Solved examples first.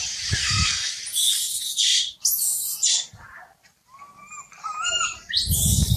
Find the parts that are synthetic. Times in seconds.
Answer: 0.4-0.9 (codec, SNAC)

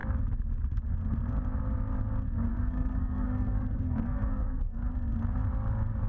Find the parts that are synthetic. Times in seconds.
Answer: 2.5-4.9 (codec, SNAC)

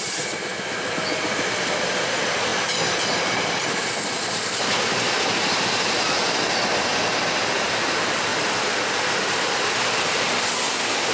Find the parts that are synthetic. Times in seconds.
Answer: none

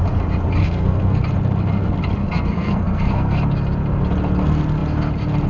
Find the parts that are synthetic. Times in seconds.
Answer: 0.6-1.2 (codec, SNAC); 2.2-3.4

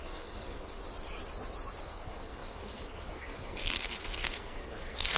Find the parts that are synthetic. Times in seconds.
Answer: 0.0-0.8 (codec, SNAC); 1.8-5.2

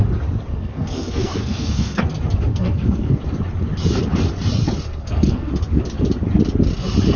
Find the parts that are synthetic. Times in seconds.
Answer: 0.5-2.0 (codec, SNAC); 2.5-3.2; 4.9-5.5